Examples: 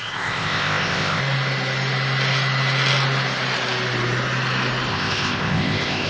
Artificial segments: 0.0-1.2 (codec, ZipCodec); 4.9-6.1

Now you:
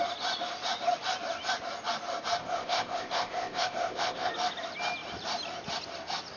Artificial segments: 2.4-4.3 (codec, ZipCodec)

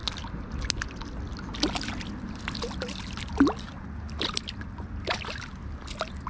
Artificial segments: none

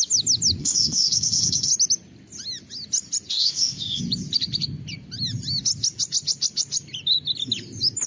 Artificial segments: 0.6-1.7 (codec, ZipCodec); 3.4-4.0